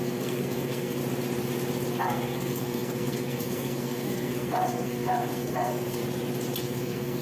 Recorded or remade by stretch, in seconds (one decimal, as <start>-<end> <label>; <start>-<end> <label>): 0.0-1.0 remade; 1.0-2.0 recorded; 2.0-6.0 remade; 6.0-6.6 recorded; 6.6-7.2 remade